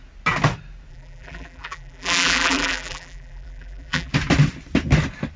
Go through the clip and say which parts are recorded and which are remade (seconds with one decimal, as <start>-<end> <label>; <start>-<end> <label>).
0.0-0.9 recorded; 0.9-4.1 remade; 4.1-5.4 recorded